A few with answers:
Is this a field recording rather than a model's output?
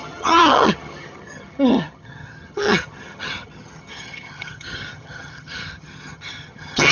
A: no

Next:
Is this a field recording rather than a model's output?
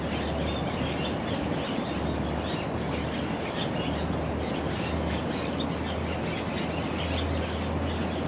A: yes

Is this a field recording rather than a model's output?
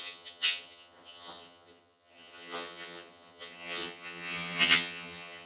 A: no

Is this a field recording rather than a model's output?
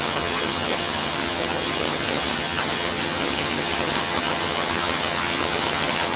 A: no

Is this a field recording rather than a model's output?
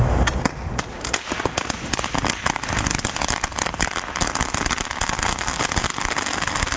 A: yes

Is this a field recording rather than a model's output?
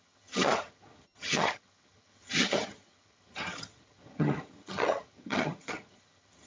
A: no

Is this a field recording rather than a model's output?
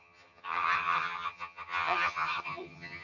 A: no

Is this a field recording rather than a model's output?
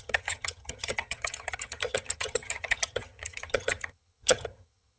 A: no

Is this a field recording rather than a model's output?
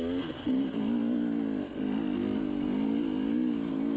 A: yes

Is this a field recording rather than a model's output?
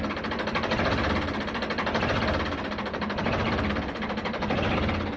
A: yes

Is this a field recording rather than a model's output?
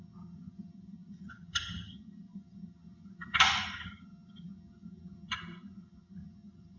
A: no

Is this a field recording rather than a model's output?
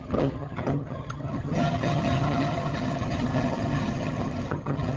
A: no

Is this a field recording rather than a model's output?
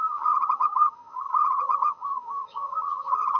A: no